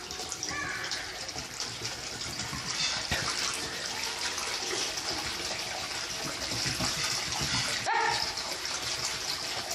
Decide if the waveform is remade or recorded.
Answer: recorded